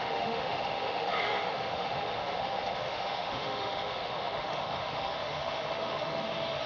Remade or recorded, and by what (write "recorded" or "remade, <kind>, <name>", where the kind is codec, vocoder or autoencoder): remade, autoencoder, DAC-VAE